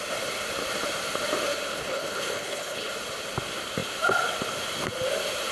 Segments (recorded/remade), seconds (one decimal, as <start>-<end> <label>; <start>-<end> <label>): 0.0-1.7 recorded; 1.7-2.9 remade; 2.9-5.5 recorded

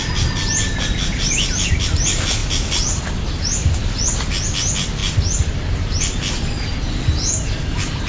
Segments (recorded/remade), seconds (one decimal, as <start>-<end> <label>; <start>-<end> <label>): 0.0-8.1 recorded

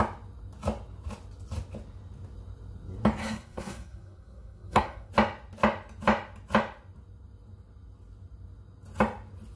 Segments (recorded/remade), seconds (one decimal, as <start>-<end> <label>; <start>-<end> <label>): 0.0-3.2 recorded; 3.2-5.1 remade; 5.1-9.6 recorded

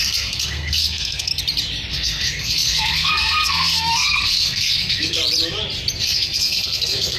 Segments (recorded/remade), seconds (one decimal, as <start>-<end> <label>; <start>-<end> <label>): 0.0-1.3 remade; 1.3-1.9 recorded; 1.9-5.2 remade; 5.2-6.0 recorded; 6.0-7.2 remade

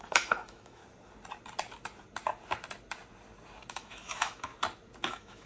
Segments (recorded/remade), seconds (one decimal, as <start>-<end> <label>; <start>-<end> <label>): 0.0-0.8 remade; 0.8-3.7 recorded; 3.7-4.5 remade; 4.5-5.1 recorded; 5.1-5.5 remade